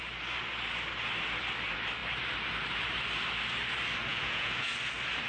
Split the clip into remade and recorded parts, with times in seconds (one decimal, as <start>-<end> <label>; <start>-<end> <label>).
0.0-4.1 recorded; 4.1-4.7 remade; 4.7-5.3 recorded